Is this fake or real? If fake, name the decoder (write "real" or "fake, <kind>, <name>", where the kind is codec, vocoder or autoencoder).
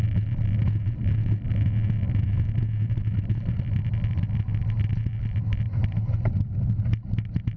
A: real